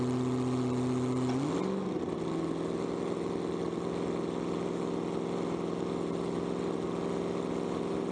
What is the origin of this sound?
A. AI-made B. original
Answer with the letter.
B